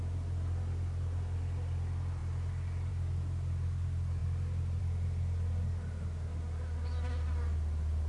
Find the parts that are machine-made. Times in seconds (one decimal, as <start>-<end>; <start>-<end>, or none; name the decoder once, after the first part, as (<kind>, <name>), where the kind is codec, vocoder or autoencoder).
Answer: none